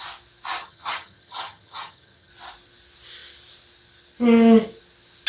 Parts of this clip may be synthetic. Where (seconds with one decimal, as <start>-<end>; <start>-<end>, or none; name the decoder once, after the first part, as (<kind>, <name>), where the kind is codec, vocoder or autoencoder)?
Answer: 0.6-2.3 (vocoder, HiFi-GAN)